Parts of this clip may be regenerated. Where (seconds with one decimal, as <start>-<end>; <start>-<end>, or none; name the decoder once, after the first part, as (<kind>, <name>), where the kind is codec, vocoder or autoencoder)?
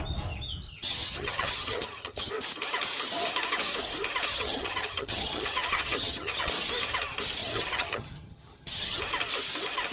0.7-2.3 (vocoder, HiFi-GAN); 4.3-6.5; 7.4-9.0